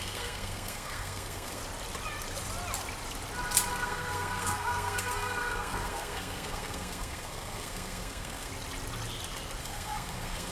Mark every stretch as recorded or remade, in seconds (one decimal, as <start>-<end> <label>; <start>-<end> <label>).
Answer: 0.0-1.6 remade; 1.6-3.7 recorded; 3.7-8.5 remade; 8.5-9.6 recorded; 9.6-10.5 remade